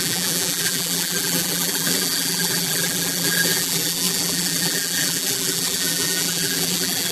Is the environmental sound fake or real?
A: fake